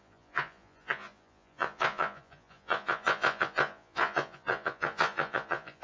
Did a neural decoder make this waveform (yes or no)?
yes